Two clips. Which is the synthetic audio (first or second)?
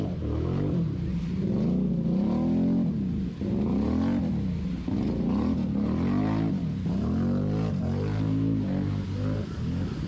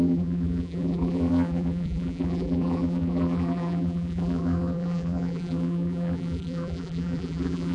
second